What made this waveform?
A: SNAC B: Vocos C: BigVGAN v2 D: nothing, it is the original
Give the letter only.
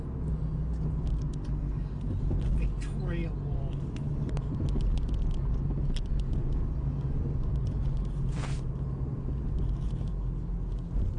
D